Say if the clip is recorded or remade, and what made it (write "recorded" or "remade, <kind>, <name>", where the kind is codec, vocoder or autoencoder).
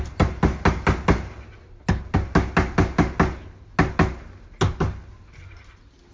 recorded